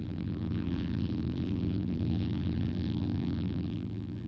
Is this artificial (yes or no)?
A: yes